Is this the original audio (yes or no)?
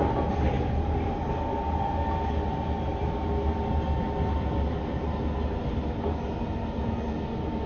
yes